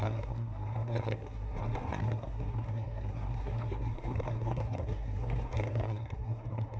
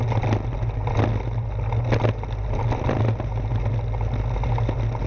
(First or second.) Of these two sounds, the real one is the second